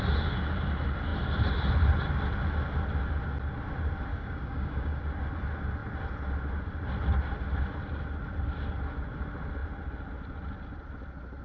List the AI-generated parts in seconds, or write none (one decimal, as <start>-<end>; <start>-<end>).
4.1-5.0